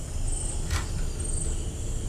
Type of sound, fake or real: real